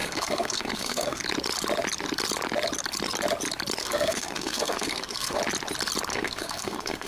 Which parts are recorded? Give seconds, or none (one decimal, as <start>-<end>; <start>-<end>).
1.2-3.8; 5.4-6.1